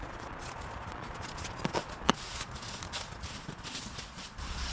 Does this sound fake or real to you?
fake